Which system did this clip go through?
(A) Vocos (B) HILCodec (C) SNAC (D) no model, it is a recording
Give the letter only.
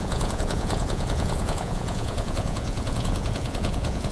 A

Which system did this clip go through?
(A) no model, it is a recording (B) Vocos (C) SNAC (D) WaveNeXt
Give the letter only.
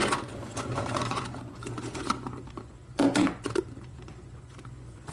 B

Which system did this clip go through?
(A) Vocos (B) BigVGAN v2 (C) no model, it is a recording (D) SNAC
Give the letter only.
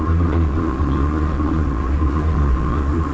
A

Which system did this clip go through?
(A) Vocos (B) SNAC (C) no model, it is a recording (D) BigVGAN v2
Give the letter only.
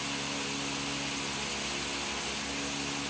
C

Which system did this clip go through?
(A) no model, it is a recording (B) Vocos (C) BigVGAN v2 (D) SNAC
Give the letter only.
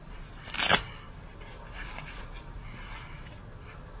A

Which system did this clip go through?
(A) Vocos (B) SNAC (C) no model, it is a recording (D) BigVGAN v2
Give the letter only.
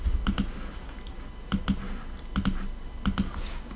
C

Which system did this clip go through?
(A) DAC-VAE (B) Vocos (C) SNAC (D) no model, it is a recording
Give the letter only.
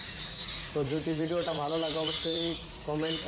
B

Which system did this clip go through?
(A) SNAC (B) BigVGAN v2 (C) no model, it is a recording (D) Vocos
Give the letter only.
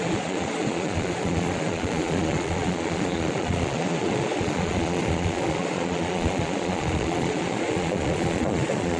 D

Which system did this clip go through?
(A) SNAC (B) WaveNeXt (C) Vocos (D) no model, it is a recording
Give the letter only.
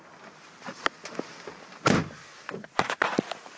D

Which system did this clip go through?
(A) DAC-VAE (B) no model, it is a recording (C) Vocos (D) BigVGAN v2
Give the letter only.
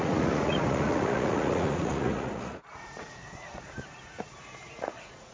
C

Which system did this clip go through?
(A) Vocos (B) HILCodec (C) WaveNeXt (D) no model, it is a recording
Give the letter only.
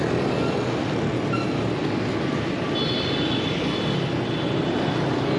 D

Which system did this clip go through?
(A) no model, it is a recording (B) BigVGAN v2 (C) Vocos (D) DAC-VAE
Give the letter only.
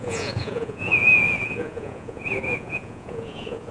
C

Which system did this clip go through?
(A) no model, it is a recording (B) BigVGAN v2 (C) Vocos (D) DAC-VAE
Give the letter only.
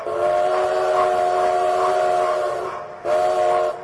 A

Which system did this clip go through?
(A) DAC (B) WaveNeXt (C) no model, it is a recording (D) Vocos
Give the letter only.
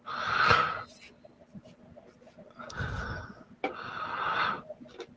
C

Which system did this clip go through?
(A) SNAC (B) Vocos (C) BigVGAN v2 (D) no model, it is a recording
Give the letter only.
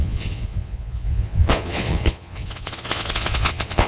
B